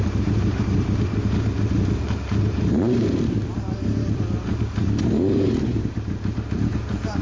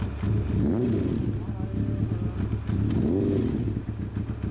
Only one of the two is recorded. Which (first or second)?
second